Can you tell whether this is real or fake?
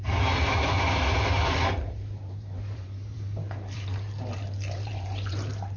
fake